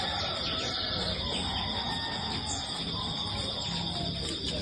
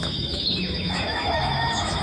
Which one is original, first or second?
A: first